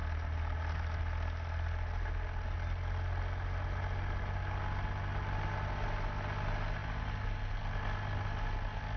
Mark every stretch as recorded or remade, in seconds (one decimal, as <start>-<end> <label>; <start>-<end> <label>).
0.0-9.0 recorded